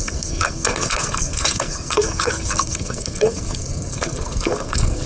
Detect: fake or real fake